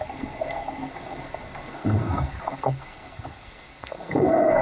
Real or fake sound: fake